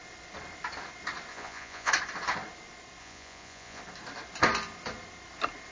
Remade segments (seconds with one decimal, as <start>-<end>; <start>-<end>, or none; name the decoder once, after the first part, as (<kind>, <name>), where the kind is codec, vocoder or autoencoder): 1.3-1.9 (vocoder, Vocos); 3.0-3.8